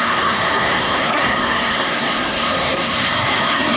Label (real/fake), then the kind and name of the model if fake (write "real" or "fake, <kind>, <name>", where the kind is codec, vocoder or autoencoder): fake, codec, SNAC